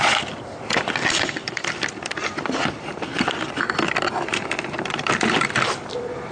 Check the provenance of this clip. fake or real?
fake